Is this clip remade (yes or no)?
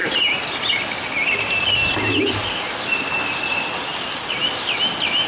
no